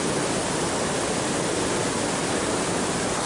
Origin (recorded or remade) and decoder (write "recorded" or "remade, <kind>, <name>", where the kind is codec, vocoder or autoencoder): recorded